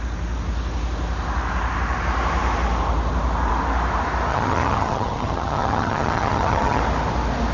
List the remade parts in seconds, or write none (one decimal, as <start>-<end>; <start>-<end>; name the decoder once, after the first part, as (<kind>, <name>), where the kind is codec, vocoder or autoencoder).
4.3-6.8 (vocoder, HiFi-GAN)

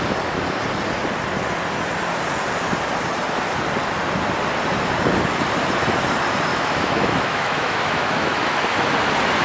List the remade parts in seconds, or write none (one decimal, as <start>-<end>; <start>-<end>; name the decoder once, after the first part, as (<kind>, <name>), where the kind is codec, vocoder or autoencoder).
6.5-8.6 (autoencoder, DAC-VAE)

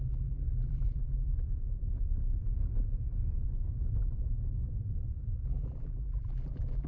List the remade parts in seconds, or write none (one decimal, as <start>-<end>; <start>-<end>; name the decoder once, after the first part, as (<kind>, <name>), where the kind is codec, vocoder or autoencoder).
0.0-1.3 (vocoder, BigVGAN v2); 5.4-6.9